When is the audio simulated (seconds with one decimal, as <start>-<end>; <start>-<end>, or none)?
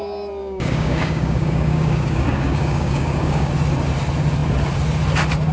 0.4-3.5